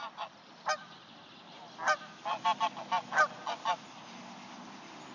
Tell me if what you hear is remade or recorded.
recorded